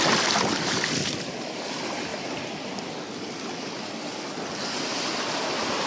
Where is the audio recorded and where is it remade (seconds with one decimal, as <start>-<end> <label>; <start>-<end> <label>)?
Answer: 0.0-5.9 recorded